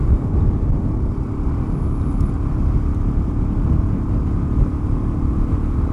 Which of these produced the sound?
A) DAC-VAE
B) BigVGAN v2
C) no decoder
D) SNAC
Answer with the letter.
C